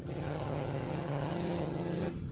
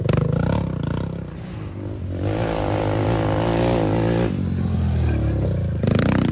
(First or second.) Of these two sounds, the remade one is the first